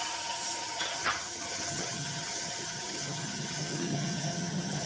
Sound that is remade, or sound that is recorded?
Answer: remade